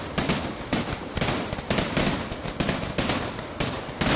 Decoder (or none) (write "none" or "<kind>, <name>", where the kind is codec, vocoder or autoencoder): none